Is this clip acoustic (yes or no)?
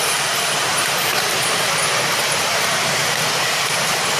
no